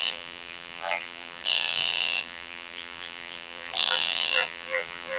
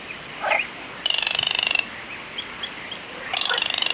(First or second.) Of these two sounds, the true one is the second